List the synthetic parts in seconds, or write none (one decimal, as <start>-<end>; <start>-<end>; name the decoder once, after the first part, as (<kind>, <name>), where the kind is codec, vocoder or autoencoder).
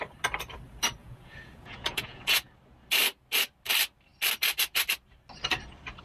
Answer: 1.0-2.5 (vocoder, Vocos)